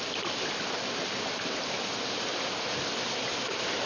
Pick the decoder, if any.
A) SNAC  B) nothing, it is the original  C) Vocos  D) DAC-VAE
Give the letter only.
B